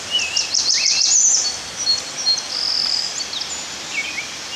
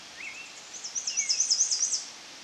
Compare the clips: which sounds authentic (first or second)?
second